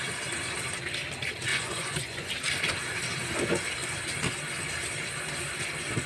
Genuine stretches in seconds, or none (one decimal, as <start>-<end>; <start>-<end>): 0.0-1.5; 2.3-6.1